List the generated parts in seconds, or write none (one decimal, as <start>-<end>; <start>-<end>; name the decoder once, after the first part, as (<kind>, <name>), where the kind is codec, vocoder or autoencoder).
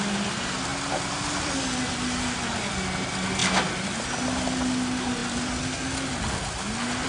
none